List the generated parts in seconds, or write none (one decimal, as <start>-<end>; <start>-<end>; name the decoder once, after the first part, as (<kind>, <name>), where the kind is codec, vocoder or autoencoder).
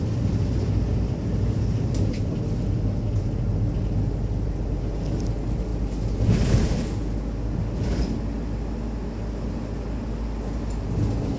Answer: none